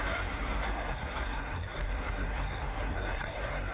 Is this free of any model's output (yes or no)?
no